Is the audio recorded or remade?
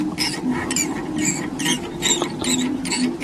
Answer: recorded